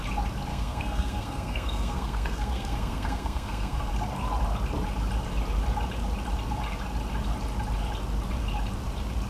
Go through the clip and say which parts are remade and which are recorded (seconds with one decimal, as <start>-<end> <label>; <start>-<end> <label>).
0.0-0.5 recorded; 0.5-3.9 remade; 3.9-9.3 recorded